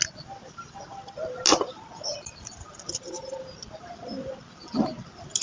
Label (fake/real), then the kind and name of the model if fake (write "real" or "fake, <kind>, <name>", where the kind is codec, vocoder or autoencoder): real